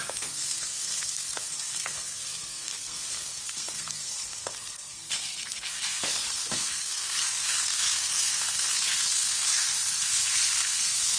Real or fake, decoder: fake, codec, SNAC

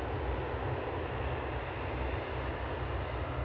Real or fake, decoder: real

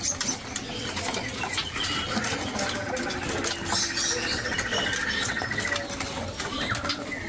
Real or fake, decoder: real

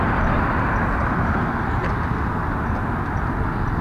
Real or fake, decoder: real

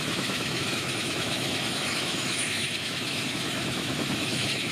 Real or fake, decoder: fake, autoencoder, DAC-VAE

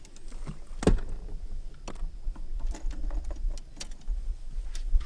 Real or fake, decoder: real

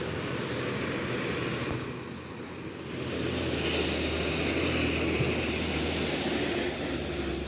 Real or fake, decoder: real